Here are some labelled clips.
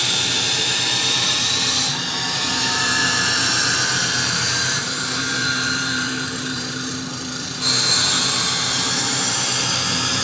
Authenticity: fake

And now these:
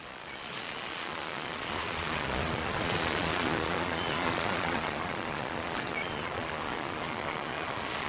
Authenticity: fake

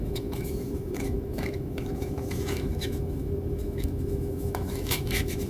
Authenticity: fake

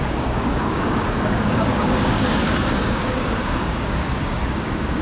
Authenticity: fake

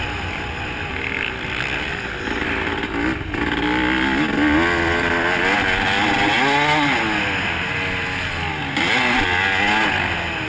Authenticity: real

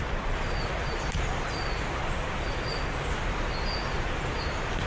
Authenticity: real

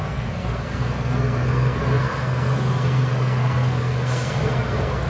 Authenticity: fake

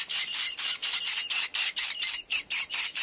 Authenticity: real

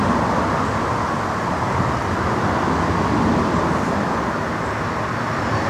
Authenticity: real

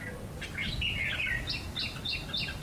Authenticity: real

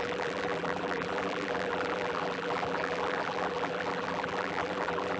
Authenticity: fake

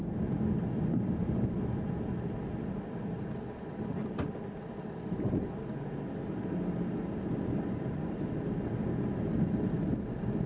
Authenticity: real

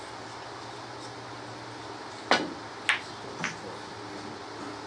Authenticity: real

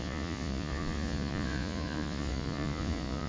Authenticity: fake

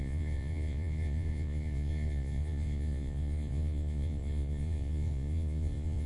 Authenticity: fake